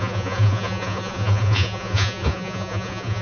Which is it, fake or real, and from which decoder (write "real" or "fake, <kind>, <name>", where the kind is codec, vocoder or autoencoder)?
fake, vocoder, Vocos